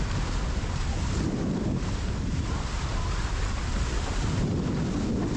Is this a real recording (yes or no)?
yes